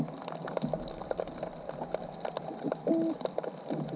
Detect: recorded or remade recorded